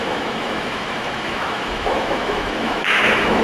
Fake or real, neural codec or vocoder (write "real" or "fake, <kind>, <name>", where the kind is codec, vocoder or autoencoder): fake, autoencoder, DAC-VAE